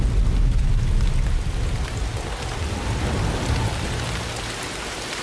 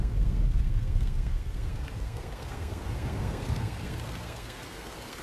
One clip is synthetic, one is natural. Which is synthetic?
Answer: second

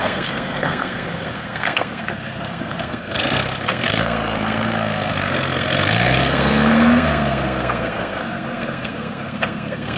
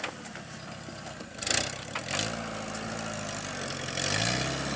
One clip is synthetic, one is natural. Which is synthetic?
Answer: first